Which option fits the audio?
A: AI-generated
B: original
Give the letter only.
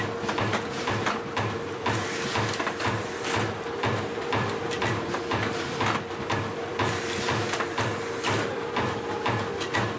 A